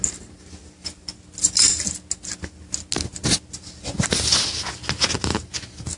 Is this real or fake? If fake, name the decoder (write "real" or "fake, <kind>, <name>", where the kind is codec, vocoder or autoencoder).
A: real